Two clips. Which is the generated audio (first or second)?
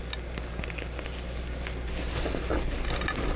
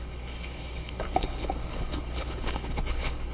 second